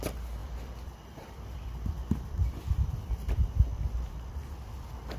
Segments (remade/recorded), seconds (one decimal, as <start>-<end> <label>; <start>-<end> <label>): 0.0-0.4 recorded; 0.4-3.3 remade; 3.3-5.2 recorded